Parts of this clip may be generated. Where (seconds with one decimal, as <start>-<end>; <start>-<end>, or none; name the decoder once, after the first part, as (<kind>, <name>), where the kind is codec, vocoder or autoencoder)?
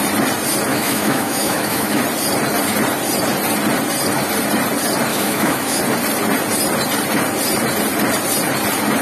0.7-2.0 (autoencoder, DAC-VAE); 5.1-5.8